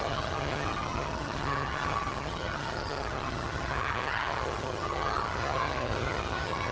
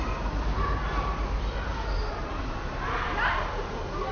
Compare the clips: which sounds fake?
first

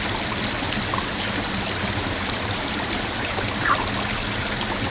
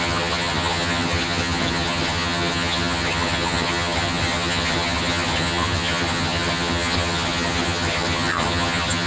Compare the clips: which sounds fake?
second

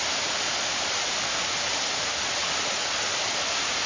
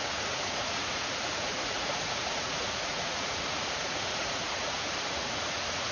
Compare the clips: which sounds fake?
second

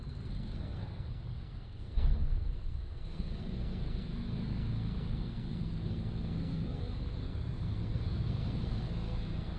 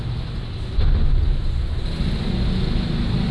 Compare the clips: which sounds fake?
first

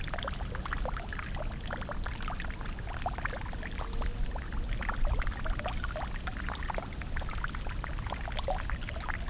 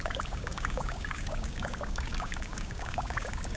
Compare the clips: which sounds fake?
second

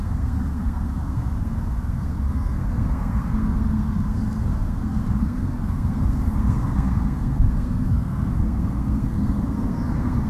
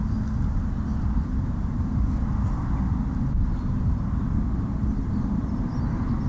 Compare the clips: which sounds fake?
first